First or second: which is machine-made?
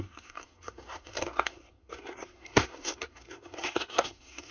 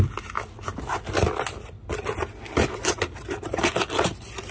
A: first